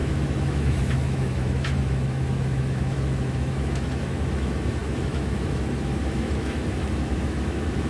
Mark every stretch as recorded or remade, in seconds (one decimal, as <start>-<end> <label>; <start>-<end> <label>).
0.0-7.9 remade